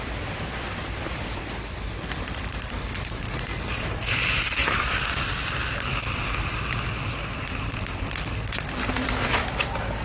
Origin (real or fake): fake